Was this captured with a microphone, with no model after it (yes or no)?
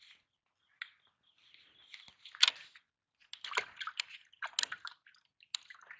yes